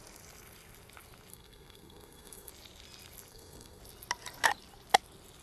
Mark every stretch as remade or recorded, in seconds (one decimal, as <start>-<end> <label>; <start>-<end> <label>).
0.0-1.3 recorded; 1.3-2.5 remade; 2.5-3.3 recorded; 3.3-3.8 remade; 3.8-5.4 recorded